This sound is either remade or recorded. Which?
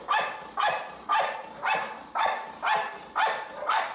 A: recorded